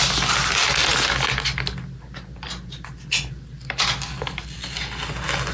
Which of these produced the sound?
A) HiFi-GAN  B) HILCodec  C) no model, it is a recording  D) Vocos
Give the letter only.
C